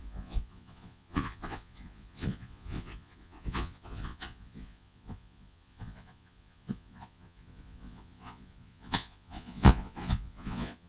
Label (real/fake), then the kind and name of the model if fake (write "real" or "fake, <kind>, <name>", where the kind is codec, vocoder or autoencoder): fake, vocoder, Vocos